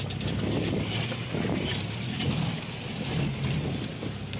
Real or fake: real